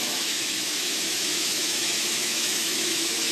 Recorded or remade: remade